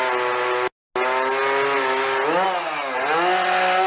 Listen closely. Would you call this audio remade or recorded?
recorded